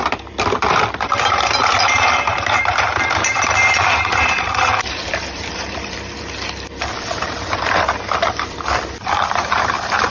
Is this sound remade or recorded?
remade